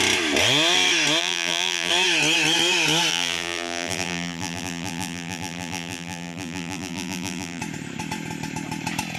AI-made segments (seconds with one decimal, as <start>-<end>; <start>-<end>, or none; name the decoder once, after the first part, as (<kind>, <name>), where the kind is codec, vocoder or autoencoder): 1.2-1.9 (vocoder, BigVGAN v2); 3.1-7.6